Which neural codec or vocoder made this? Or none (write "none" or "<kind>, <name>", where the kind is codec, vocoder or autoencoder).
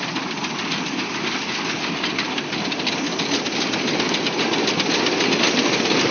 none